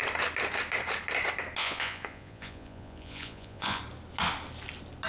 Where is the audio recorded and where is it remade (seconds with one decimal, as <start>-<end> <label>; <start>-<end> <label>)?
0.0-1.6 recorded; 1.6-3.8 remade; 3.8-5.1 recorded